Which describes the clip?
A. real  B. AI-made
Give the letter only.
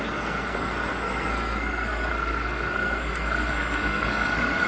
B